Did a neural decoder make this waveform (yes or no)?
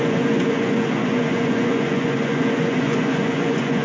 yes